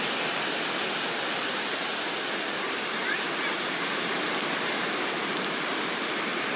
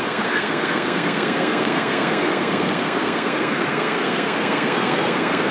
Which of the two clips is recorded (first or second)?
first